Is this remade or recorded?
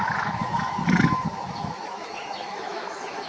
remade